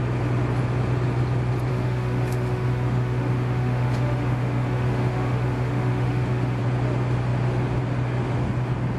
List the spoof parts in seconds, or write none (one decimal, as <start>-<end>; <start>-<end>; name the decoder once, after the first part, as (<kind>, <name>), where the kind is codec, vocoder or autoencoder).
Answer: 1.7-6.6 (autoencoder, DAC-VAE)